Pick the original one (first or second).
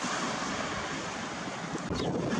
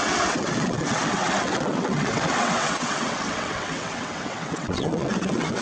first